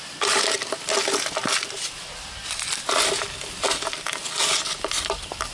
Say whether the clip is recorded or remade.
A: recorded